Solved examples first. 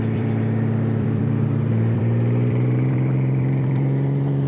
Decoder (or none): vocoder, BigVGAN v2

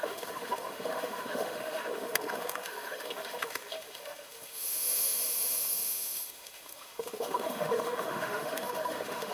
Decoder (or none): autoencoder, DAC-VAE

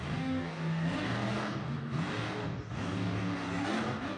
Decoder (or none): codec, DAC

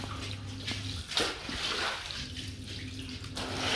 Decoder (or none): none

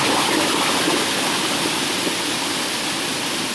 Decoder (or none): none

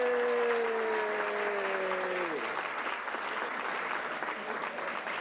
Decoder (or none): none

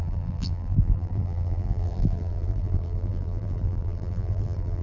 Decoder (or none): vocoder, BigVGAN v2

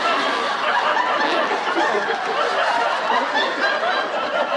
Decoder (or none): none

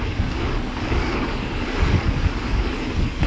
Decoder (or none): codec, DAC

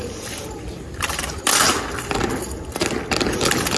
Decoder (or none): none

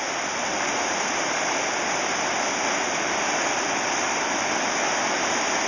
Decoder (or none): none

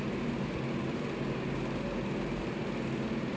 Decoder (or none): none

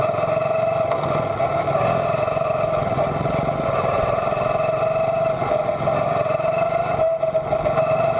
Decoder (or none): none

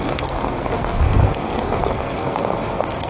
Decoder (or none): codec, SNAC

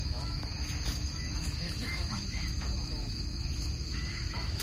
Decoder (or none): autoencoder, DAC-VAE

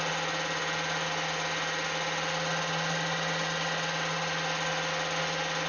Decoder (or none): none